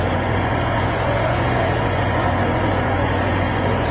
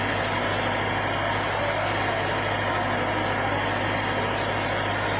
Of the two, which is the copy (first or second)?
first